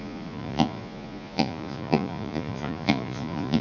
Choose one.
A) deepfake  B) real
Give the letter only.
A